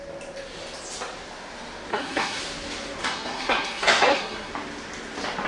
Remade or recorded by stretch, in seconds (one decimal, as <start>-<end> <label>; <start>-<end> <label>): 0.0-1.9 recorded; 1.9-2.4 remade; 2.4-3.0 recorded; 3.0-4.5 remade; 4.5-5.5 recorded